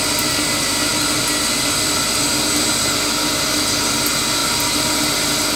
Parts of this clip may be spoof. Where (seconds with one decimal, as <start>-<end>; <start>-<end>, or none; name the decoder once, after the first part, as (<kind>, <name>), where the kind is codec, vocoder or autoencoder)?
none